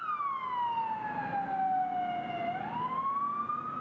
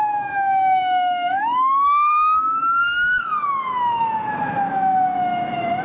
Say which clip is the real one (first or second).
first